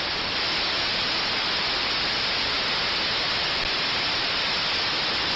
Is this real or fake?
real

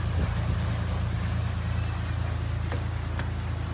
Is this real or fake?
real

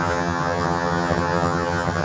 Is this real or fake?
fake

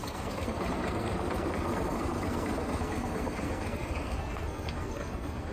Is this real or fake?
fake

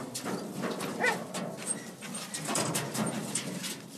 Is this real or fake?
real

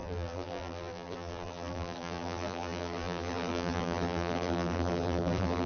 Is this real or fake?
fake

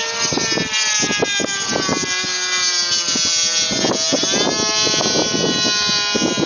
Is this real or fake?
real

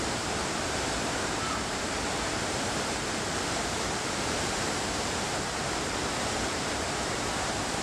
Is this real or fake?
fake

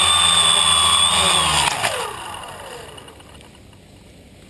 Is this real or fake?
real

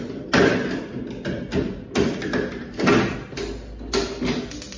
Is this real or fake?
real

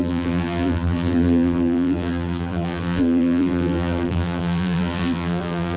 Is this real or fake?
fake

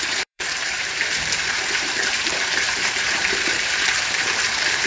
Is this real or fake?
fake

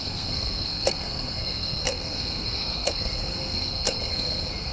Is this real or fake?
fake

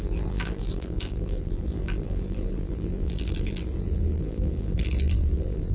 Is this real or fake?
fake